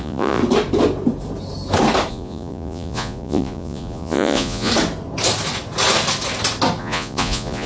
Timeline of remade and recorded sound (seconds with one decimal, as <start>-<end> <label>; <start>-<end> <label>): 0.0-0.4 remade; 0.4-2.1 recorded; 2.1-4.7 remade; 4.7-6.8 recorded; 6.8-7.7 remade